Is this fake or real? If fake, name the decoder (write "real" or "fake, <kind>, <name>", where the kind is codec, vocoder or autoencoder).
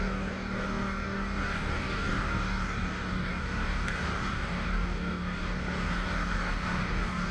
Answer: fake, codec, DAC